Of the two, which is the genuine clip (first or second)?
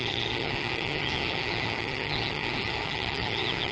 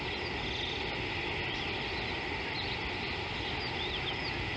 second